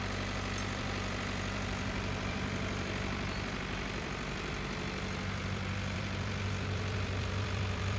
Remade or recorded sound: remade